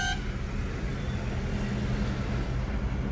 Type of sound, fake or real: real